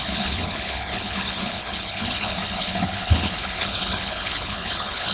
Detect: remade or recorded remade